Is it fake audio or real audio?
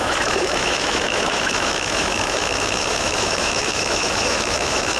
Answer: fake